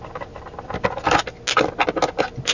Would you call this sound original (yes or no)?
yes